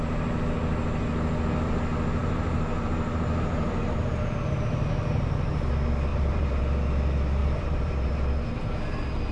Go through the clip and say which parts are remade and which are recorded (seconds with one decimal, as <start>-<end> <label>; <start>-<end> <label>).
0.0-2.2 recorded; 2.2-5.5 remade; 5.5-6.1 recorded; 6.1-6.6 remade; 6.6-7.4 recorded; 7.4-8.3 remade; 8.3-9.3 recorded